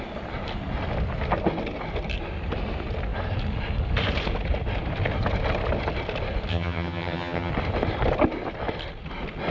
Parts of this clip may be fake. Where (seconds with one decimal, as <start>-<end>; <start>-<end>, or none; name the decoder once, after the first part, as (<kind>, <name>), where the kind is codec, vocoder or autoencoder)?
6.5-7.5 (vocoder, HiFi-GAN)